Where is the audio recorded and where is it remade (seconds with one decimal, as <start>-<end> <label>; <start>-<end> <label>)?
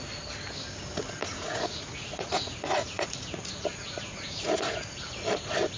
0.0-1.2 recorded; 1.2-4.7 remade; 4.7-5.8 recorded